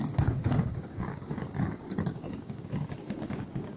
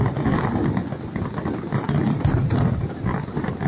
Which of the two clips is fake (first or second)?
first